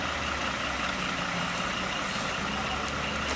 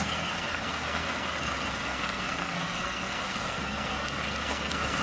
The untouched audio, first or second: first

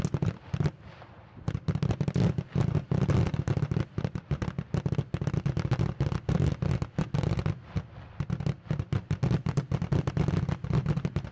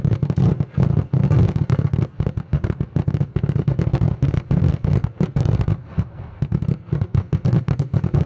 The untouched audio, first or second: first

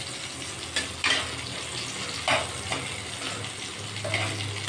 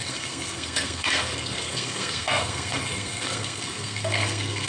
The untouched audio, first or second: first